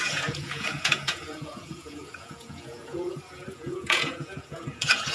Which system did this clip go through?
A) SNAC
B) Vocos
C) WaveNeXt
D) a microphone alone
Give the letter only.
B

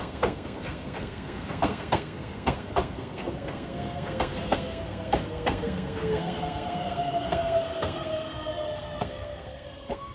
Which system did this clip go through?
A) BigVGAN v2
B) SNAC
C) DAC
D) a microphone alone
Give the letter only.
B